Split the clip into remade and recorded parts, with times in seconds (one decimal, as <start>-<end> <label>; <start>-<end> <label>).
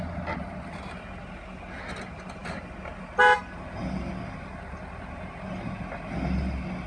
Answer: 0.0-6.9 recorded